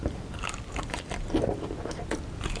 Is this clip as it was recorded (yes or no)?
yes